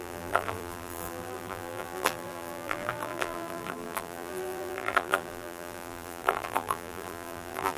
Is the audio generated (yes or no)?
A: yes